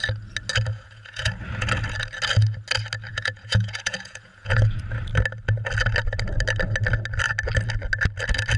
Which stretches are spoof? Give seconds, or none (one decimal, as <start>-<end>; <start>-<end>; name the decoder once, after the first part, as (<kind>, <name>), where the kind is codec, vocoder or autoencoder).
0.7-1.3 (vocoder, Vocos); 3.1-4.8